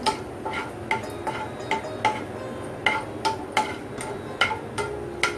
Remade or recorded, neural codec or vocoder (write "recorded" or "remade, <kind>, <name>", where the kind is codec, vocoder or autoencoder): recorded